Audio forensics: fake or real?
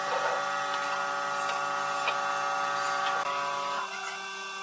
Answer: real